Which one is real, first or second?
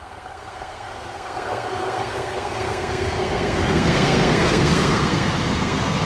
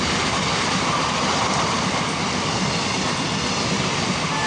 second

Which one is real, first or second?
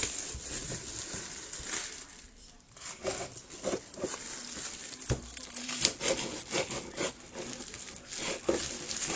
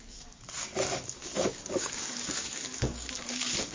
first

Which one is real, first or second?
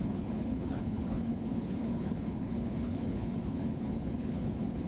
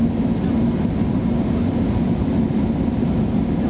second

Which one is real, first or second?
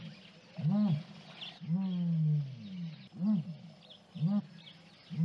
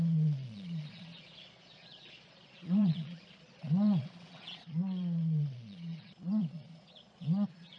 first